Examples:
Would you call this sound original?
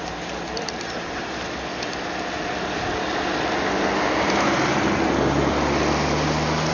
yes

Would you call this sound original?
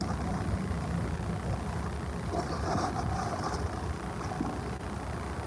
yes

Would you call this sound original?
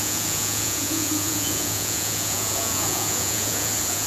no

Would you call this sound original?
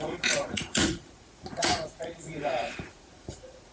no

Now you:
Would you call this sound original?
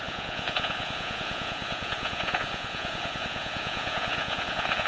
no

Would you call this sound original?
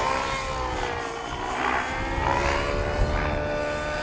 yes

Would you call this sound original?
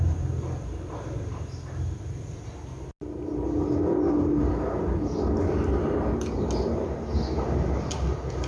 yes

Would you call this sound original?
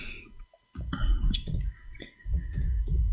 no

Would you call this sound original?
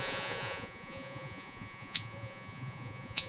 no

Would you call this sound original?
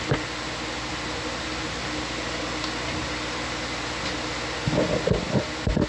yes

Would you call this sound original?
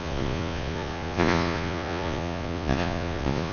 no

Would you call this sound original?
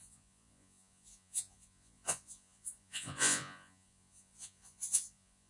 no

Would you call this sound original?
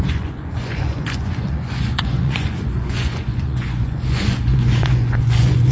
no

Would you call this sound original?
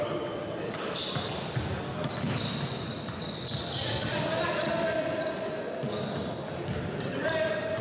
yes